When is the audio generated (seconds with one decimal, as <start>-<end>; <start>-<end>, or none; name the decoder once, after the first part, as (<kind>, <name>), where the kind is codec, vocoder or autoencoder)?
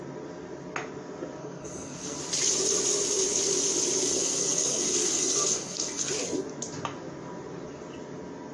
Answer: 1.4-2.2 (codec, SNAC); 4.0-6.1